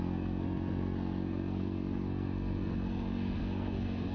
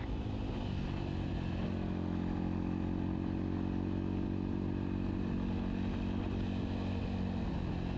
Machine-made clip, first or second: first